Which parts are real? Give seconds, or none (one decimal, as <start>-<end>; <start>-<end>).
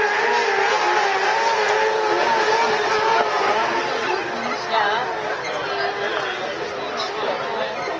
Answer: 0.0-8.0